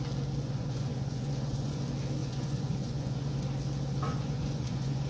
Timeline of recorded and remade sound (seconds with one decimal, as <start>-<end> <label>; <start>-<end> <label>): 0.0-0.4 recorded; 0.4-1.8 remade; 1.8-2.2 recorded; 2.2-3.3 remade; 3.3-4.1 recorded; 4.1-5.1 remade